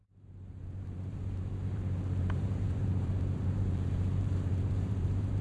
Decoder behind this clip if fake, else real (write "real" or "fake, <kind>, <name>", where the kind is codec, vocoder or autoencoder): fake, vocoder, BigVGAN v2